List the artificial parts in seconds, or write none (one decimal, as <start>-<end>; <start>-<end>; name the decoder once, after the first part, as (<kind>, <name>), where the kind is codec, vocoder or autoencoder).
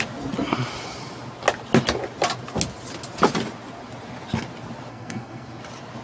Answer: 4.9-5.6 (codec, SNAC)